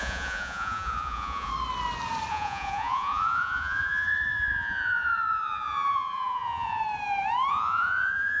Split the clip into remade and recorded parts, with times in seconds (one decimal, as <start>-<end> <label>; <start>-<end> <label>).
0.0-1.5 remade; 1.5-2.3 recorded; 2.3-6.8 remade; 6.8-7.5 recorded; 7.5-8.4 remade